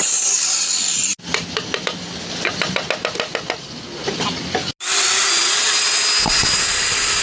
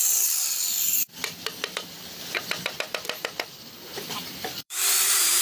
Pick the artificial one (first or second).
second